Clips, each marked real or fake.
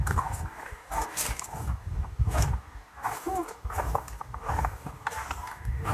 fake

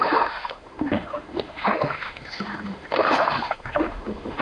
fake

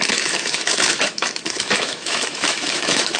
fake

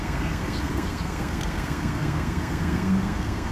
fake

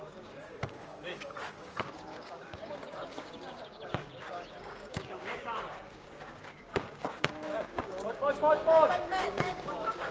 fake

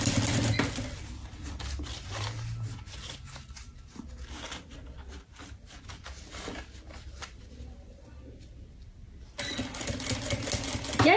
real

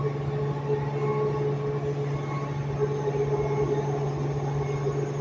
real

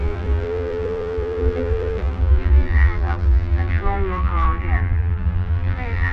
fake